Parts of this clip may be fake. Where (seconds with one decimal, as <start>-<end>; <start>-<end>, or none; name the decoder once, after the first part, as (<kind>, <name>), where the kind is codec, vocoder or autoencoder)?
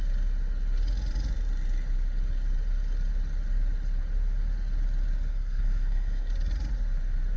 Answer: 5.3-6.3 (codec, SNAC)